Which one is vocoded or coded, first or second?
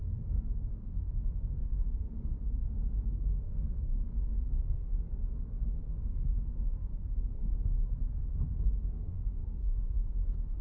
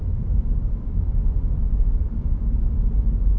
first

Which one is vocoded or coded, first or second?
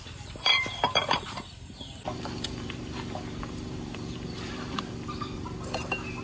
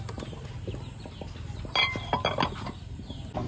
first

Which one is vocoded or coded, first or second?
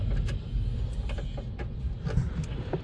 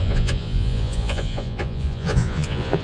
second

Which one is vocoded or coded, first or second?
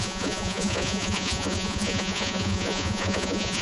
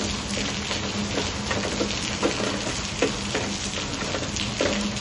first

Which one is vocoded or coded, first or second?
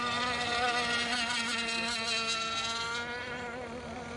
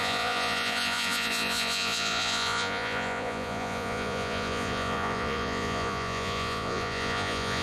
second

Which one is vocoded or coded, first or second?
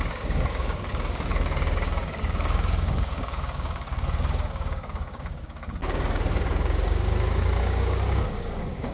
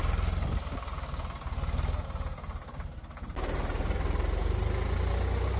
first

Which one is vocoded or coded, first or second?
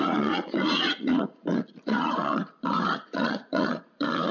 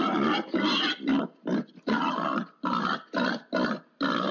first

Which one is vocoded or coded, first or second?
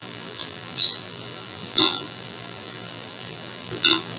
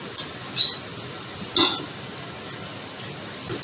first